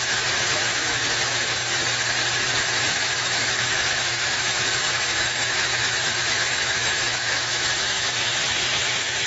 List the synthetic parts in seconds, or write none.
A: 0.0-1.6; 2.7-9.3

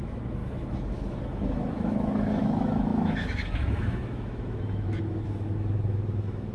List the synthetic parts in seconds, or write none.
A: 0.0-6.5

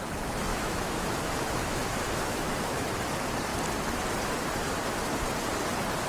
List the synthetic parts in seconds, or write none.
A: 0.5-2.9

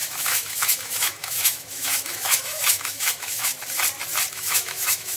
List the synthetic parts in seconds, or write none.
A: 0.0-3.5; 4.3-5.2

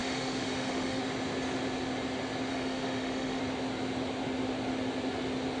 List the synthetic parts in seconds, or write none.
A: 0.0-1.0; 2.5-3.4

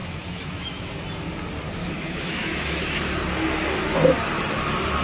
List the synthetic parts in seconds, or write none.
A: 0.0-0.9; 1.8-3.1

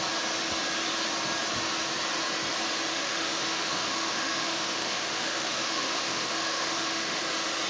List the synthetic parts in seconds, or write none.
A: 2.9-7.2